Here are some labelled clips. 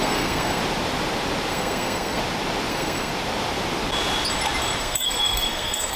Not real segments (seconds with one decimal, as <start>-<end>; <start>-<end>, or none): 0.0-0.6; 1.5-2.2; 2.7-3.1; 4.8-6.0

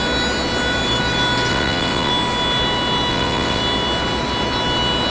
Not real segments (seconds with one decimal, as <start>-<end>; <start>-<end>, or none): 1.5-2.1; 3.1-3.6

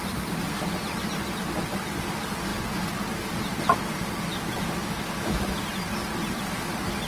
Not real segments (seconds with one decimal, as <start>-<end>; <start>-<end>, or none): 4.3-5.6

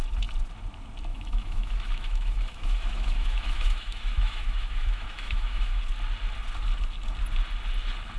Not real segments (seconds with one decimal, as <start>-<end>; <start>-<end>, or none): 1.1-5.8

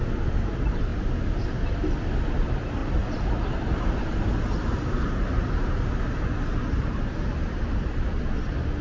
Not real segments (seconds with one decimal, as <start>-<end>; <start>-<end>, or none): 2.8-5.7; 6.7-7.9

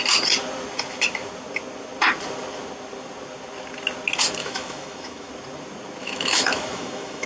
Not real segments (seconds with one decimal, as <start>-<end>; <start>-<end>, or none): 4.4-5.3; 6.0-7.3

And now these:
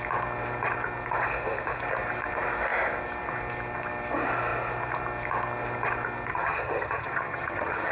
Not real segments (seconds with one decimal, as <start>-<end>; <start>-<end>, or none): 6.3-7.9

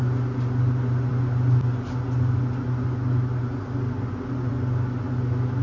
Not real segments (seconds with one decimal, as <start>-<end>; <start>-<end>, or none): none